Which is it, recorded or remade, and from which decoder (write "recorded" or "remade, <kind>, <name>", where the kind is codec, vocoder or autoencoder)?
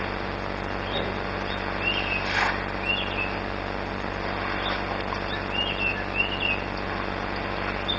recorded